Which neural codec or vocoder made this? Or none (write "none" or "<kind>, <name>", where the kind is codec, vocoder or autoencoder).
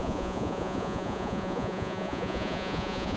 vocoder, Vocos